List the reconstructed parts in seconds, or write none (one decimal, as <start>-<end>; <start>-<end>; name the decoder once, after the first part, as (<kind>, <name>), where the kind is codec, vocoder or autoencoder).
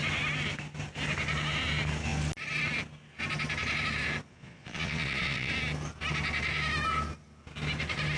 4.3-5.5 (vocoder, Vocos)